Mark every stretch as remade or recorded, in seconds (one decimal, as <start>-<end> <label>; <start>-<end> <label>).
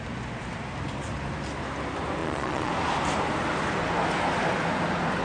0.0-2.2 recorded; 2.2-2.7 remade; 2.7-5.2 recorded